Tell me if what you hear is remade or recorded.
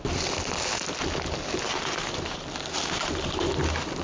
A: recorded